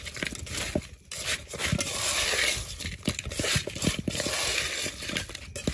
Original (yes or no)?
yes